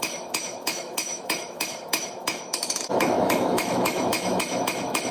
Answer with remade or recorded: remade